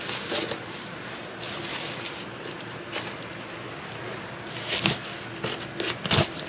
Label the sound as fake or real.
real